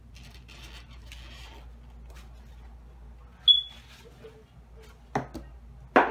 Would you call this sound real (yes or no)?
yes